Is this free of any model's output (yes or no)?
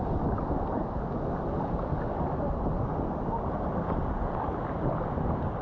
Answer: yes